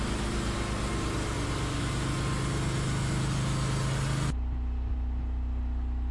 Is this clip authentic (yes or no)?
yes